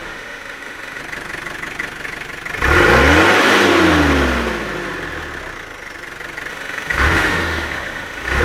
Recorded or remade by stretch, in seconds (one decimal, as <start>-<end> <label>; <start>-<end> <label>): 0.0-1.0 remade; 1.0-6.5 recorded; 6.5-8.4 remade